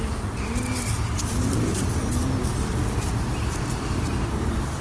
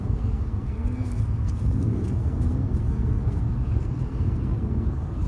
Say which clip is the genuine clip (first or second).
first